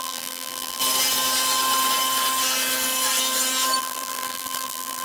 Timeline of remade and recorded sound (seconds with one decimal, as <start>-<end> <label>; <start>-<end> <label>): 0.0-0.8 remade; 0.8-3.8 recorded; 3.8-5.0 remade